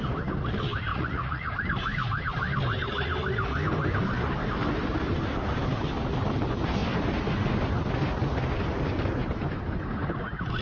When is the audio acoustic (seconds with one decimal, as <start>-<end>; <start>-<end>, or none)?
0.0-0.9; 1.5-10.6